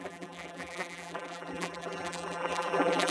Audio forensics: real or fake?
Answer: fake